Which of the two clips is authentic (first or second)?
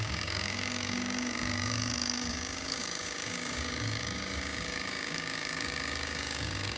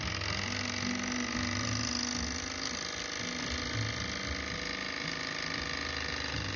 second